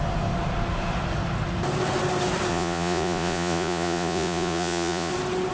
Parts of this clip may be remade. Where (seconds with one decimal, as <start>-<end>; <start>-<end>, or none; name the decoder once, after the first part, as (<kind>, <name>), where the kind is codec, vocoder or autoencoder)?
2.5-5.1 (vocoder, Vocos)